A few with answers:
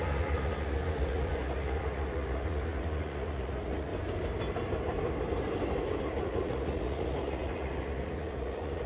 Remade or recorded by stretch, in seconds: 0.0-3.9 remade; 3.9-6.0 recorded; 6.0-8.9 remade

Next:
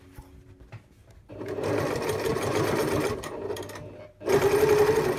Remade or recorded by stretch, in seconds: 0.0-1.0 recorded; 1.0-1.8 remade; 1.8-2.3 recorded; 2.3-3.6 remade; 3.6-5.2 recorded